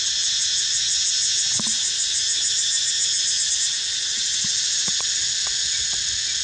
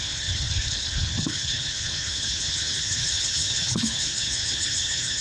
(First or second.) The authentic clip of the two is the first